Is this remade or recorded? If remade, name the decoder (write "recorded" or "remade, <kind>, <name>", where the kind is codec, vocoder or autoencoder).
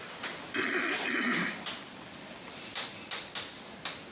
recorded